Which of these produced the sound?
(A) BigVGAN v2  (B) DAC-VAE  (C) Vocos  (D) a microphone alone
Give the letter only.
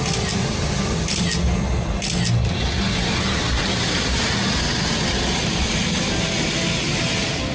D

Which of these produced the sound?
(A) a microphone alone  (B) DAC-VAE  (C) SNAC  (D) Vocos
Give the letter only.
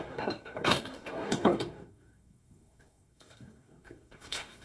C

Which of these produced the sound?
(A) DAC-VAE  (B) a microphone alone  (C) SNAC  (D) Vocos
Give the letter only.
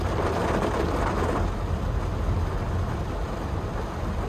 B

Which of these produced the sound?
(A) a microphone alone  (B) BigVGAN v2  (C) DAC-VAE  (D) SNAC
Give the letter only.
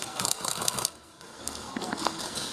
D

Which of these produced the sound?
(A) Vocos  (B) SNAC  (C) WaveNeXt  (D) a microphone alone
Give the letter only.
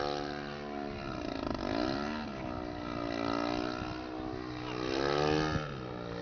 D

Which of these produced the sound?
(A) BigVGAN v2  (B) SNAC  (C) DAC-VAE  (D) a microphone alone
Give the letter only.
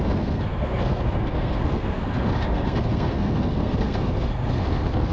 B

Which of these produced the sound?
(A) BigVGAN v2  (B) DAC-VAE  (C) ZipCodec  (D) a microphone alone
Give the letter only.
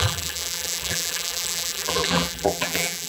A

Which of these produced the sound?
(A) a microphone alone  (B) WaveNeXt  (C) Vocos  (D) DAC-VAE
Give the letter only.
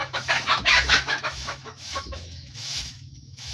D